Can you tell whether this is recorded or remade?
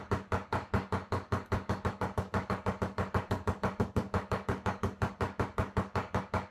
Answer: remade